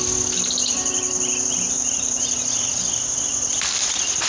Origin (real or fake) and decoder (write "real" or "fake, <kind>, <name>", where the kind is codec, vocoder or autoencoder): real